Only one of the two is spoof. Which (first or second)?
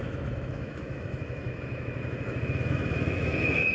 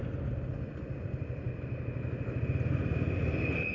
first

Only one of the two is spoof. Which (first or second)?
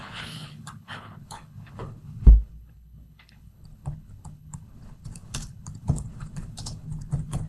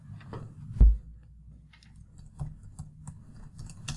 first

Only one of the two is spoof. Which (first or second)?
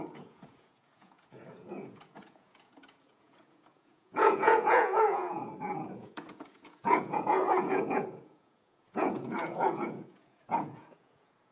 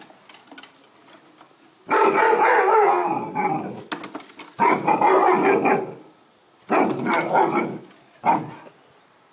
first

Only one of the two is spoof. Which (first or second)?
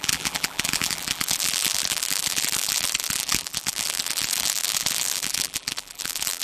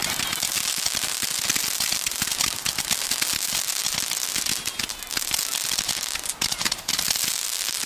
first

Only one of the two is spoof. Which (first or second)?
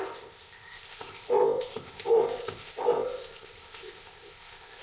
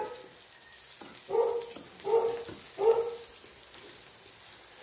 first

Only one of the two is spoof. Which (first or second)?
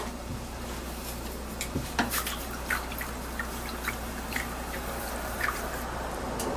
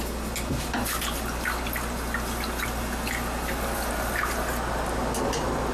first